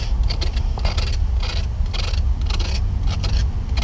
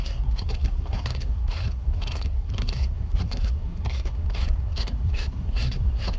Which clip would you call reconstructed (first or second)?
second